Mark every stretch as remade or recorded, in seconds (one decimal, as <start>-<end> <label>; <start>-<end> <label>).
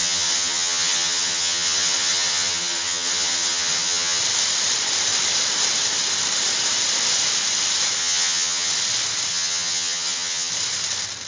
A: 0.0-4.2 remade; 4.2-8.0 recorded; 8.0-8.7 remade; 8.7-9.3 recorded; 9.3-10.5 remade; 10.5-11.3 recorded